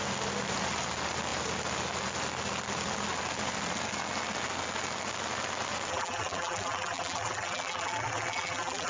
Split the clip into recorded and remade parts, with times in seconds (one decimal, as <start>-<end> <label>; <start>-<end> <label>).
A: 0.0-5.9 recorded; 5.9-8.9 remade